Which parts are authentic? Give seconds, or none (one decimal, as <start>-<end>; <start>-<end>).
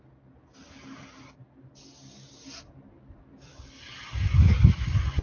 0.0-5.2